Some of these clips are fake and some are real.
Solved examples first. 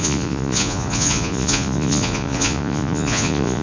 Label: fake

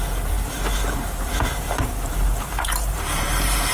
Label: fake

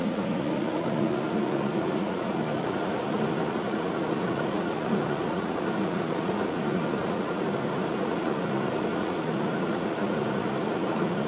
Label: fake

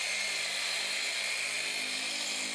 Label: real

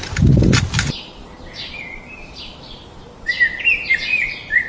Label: fake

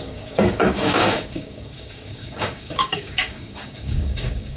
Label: fake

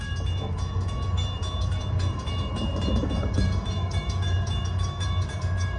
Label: fake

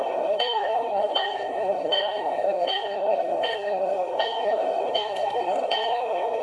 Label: fake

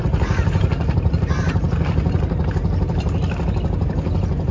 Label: real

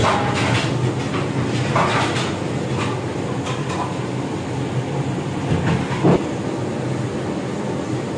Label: real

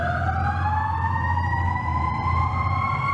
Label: fake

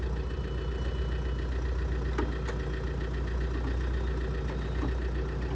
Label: real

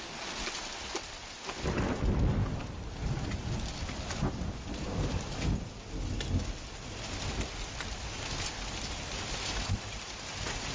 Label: real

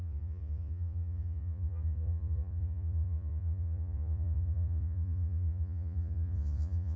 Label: fake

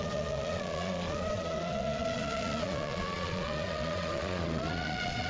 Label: fake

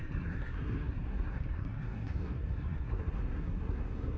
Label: fake